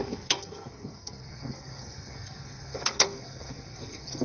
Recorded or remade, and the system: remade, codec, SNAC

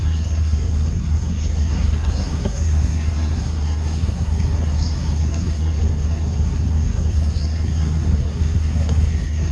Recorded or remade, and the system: remade, codec, SNAC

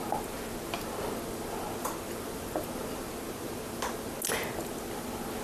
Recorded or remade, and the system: recorded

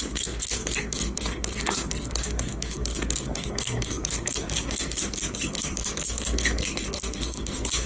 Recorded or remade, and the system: remade, codec, SNAC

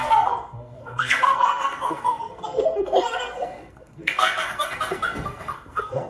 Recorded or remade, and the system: remade, codec, SNAC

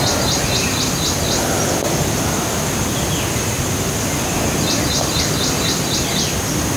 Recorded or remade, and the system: recorded